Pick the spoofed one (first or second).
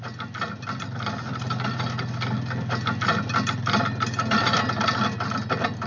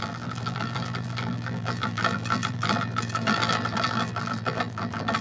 second